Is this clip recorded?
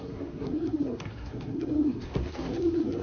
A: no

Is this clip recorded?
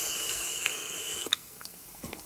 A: no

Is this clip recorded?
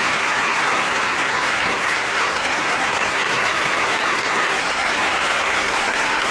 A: no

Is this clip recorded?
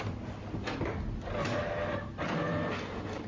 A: yes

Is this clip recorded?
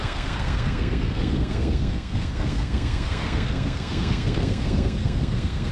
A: no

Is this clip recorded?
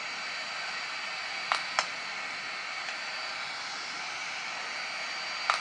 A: yes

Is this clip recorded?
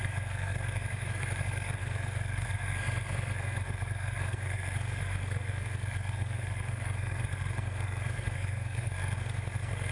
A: no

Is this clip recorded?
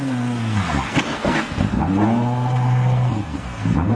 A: no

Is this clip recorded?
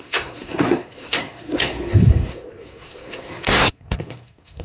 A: no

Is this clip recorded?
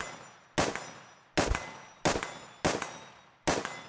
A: yes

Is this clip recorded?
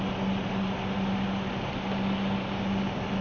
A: yes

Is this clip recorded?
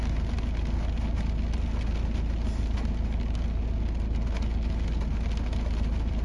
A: yes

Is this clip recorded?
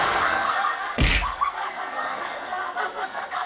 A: no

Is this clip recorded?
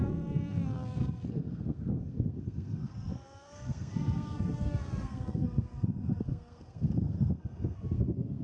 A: no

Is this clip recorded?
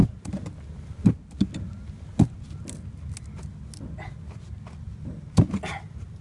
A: yes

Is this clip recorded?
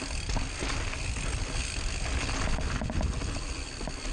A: yes